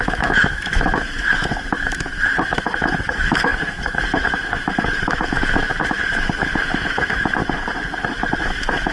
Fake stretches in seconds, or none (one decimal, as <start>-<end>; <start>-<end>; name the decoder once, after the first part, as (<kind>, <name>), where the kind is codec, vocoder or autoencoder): 0.0-7.4 (autoencoder, DAC-VAE); 8.4-8.9